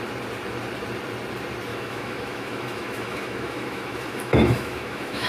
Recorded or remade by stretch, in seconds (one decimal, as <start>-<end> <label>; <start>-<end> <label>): 0.0-1.7 recorded; 1.7-5.3 remade